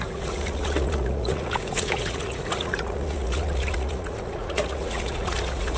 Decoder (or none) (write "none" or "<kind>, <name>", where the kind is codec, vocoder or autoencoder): vocoder, Vocos